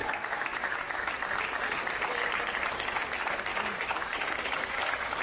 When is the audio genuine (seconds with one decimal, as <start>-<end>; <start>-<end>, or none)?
1.1-3.5